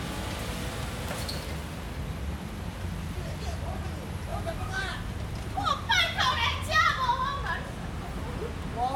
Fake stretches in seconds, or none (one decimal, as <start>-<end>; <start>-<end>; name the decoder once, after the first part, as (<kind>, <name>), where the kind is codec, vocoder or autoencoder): none